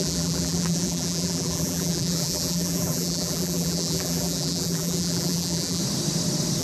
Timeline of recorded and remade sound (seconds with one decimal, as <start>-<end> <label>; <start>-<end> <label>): 0.0-5.8 remade; 5.8-6.6 recorded